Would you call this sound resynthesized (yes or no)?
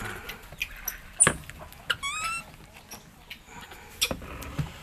no